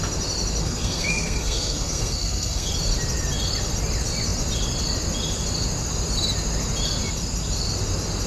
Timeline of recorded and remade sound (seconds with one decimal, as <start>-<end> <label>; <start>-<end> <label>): 0.0-0.6 recorded; 0.6-2.7 remade; 2.7-8.3 recorded